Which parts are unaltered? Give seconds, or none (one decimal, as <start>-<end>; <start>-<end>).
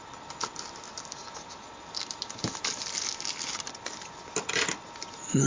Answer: 0.0-5.5